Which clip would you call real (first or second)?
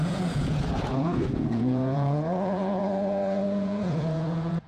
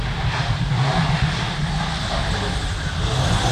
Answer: second